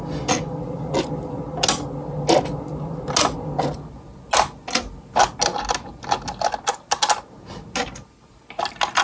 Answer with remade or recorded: recorded